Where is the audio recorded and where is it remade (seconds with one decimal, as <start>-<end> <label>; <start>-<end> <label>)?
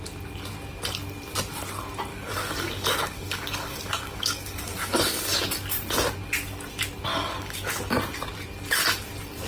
0.0-2.1 recorded; 2.1-5.0 remade; 5.0-7.1 recorded; 7.1-7.9 remade; 7.9-9.5 recorded